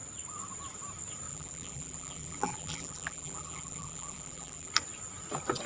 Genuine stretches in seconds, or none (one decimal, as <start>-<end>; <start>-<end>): 0.0-1.3; 4.7-5.7